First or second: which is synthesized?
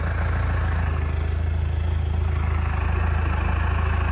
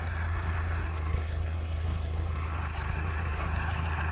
second